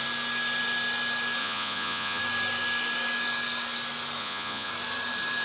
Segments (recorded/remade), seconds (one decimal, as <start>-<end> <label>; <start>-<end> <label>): 0.0-1.4 recorded; 1.4-2.2 remade; 2.2-4.2 recorded; 4.2-4.7 remade; 4.7-5.4 recorded